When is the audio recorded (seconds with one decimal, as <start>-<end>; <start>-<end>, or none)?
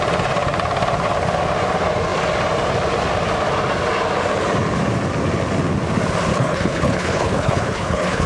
0.0-6.3